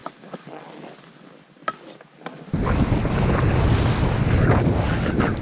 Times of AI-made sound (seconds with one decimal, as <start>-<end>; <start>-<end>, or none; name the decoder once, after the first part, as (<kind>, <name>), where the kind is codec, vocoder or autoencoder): 0.0-0.6 (vocoder, BigVGAN v2)